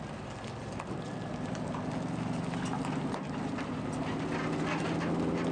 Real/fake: real